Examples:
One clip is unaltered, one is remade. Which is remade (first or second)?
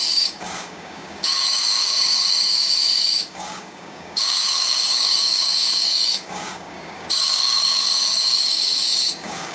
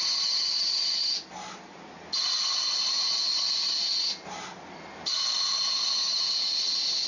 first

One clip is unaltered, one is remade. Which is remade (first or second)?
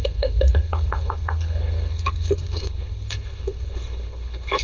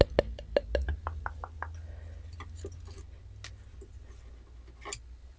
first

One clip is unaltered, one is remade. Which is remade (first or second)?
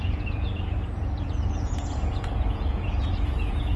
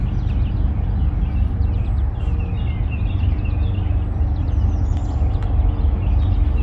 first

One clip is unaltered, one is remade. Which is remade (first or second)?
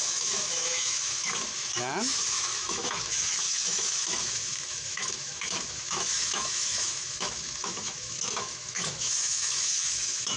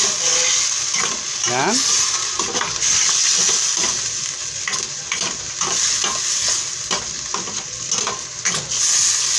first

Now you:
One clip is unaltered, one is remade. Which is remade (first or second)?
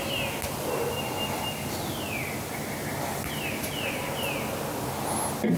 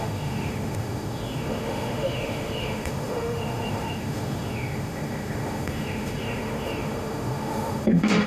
second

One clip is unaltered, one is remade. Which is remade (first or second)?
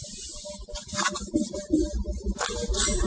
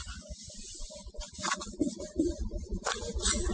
second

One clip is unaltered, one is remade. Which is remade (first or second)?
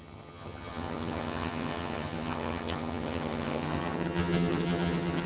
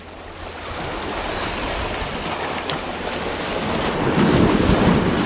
first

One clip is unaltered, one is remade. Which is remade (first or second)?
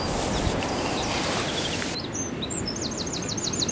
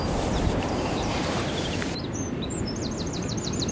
second